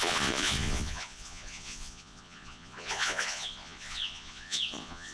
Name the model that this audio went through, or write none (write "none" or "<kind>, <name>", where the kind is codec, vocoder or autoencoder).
vocoder, Vocos